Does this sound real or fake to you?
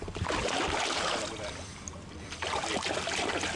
fake